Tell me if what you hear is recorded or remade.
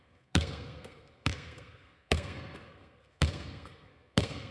remade